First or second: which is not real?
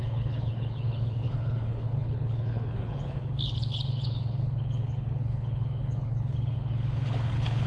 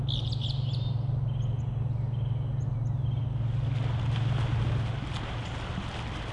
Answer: first